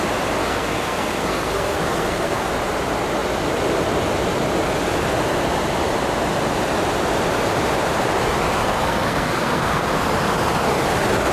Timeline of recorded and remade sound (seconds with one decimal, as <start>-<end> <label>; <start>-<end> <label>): 0.0-0.4 recorded; 0.4-2.5 remade; 2.5-8.6 recorded; 8.6-10.0 remade; 10.0-11.3 recorded